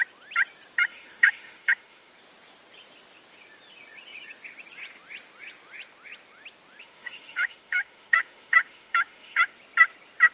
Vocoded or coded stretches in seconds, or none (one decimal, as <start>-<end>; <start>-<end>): 0.9-2.1; 6.8-9.5